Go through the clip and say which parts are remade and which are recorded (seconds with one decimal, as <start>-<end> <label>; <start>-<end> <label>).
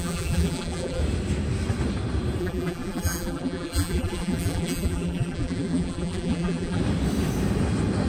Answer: 0.0-1.0 remade; 1.0-2.4 recorded; 2.4-6.8 remade; 6.8-8.1 recorded